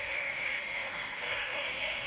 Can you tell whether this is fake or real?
fake